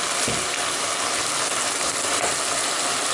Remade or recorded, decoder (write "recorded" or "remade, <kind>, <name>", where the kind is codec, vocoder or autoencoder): recorded